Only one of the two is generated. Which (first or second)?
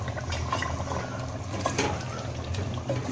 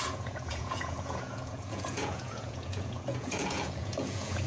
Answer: second